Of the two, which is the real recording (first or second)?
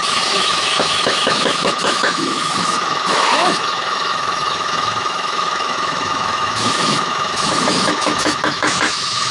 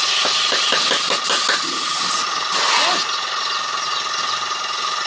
second